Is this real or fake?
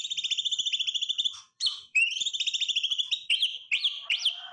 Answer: fake